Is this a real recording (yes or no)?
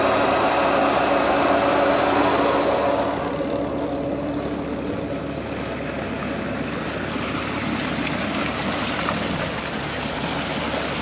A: yes